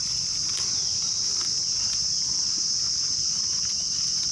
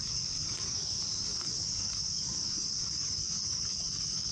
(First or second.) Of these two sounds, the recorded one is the first